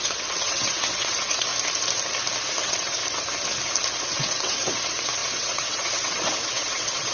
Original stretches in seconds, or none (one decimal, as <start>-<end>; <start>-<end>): 1.5-2.6; 3.0-4.0